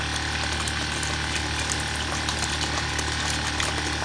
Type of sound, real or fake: real